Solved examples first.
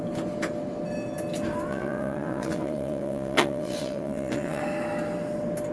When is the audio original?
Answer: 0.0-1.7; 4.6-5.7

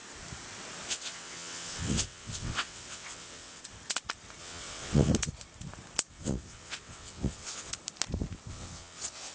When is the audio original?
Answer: 0.0-0.9; 3.6-4.4; 5.1-6.1; 7.7-8.5

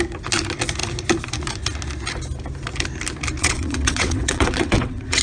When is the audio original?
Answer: 0.0-3.4

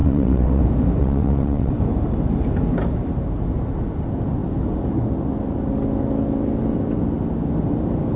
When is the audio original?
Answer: 0.6-1.0; 1.7-8.2

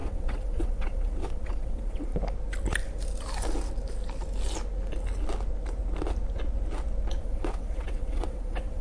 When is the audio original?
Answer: 2.1-7.2

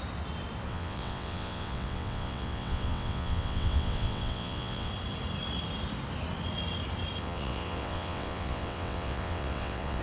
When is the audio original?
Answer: 0.0-0.7; 4.9-7.2